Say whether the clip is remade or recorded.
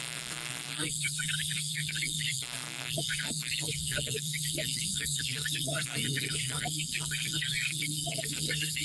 remade